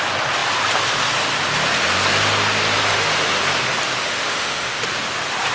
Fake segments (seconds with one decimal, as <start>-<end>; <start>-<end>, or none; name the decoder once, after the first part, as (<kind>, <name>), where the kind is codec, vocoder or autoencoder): 4.0-4.8 (autoencoder, DAC-VAE)